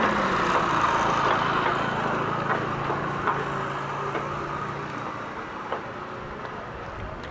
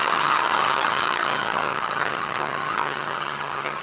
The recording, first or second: first